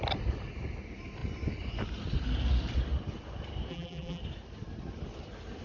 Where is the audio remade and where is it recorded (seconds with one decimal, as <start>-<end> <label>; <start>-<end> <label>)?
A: 0.0-3.7 recorded; 3.7-4.2 remade; 4.2-5.6 recorded